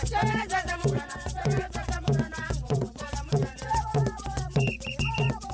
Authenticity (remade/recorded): remade